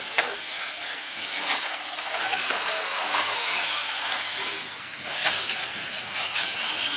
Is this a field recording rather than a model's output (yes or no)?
no